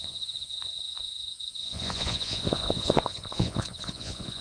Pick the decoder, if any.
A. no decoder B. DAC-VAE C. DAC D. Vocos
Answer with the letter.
D